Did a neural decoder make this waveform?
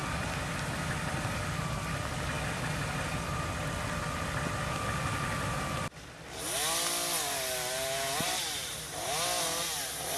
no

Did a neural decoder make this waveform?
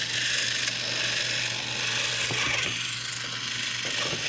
no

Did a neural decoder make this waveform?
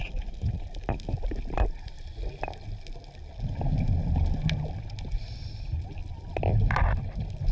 no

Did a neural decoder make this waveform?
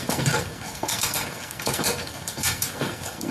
yes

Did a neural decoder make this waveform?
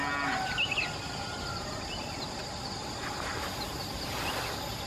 no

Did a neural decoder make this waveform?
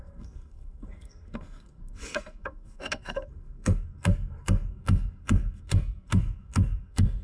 yes